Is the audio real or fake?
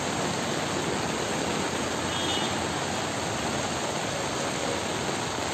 real